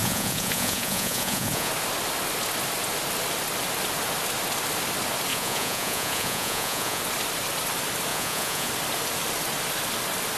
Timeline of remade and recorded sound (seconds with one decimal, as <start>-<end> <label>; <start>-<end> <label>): 0.0-1.7 remade; 1.7-5.3 recorded; 5.3-7.0 remade; 7.0-8.1 recorded; 8.1-8.7 remade; 8.7-10.4 recorded